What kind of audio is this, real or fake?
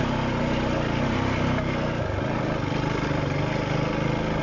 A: real